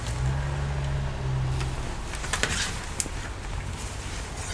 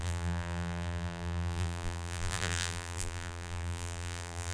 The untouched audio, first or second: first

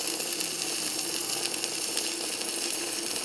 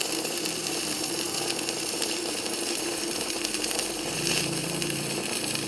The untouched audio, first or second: first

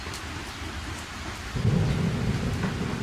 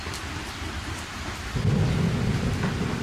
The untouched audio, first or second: first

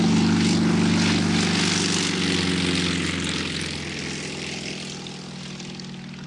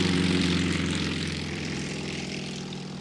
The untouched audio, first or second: first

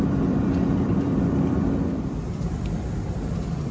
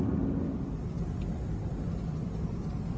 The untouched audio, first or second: second